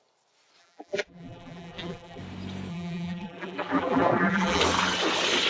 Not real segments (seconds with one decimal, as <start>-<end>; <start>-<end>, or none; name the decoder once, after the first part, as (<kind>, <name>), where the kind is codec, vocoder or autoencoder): 0.6-2.2 (vocoder, BigVGAN v2); 2.7-4.6